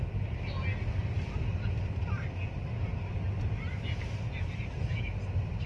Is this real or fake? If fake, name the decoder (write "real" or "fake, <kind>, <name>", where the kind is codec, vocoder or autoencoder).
real